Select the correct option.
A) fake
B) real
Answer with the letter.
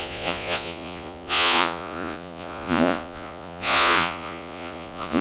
A